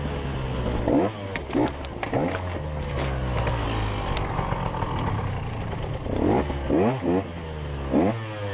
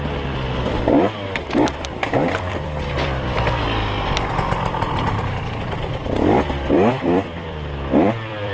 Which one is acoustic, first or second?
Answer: first